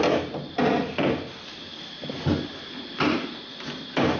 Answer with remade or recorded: recorded